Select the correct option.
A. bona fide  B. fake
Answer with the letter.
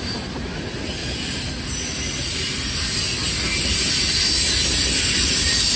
A